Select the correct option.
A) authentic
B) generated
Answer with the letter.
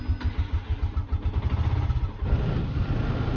A